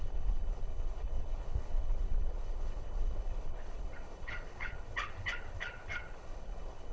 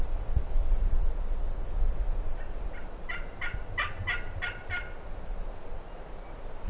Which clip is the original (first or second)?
second